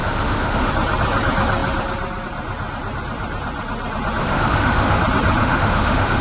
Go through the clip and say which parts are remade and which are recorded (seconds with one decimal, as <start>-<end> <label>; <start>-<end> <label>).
0.0-0.7 remade; 0.7-4.2 recorded; 4.2-5.0 remade; 5.0-5.4 recorded; 5.4-6.2 remade